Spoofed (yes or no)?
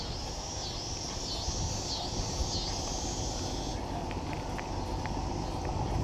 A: no